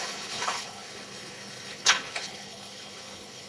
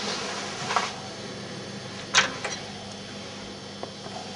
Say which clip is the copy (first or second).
first